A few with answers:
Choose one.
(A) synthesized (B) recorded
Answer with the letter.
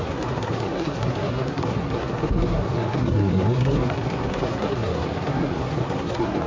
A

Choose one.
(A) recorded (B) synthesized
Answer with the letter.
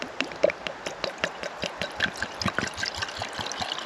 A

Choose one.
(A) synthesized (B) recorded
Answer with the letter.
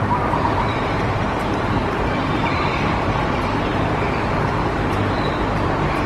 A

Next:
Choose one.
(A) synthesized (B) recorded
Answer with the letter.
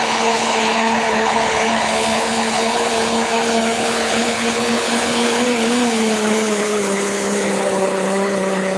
A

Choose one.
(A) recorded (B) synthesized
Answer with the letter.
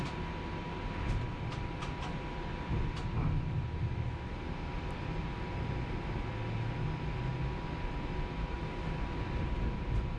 A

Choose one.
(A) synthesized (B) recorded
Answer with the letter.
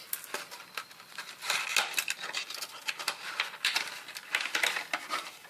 B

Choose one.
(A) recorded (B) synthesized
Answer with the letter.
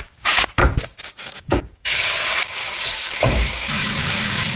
B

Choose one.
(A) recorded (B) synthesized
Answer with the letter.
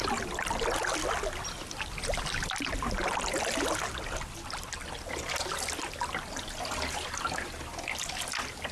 A